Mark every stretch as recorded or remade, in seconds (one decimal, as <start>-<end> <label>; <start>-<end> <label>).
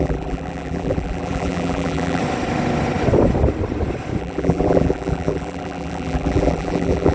0.0-2.2 remade; 2.2-4.2 recorded; 4.2-7.1 remade